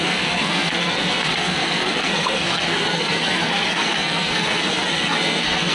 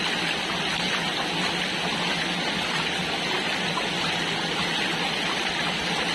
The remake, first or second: first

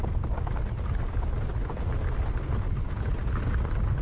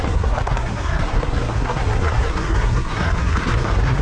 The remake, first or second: second